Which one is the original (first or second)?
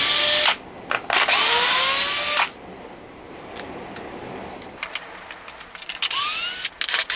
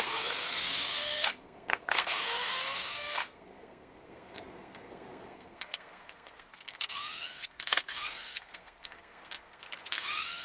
first